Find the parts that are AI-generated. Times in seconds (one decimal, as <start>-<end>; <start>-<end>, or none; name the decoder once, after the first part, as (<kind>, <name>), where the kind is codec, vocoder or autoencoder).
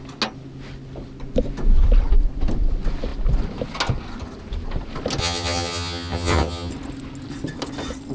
5.2-6.7 (vocoder, HiFi-GAN)